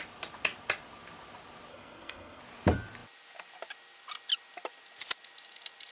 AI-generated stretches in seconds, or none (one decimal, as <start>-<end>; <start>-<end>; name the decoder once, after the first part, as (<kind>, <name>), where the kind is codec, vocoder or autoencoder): 1.7-2.4 (codec, SNAC)